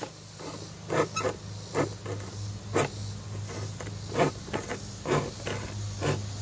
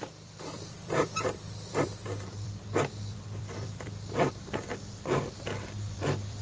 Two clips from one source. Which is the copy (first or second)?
second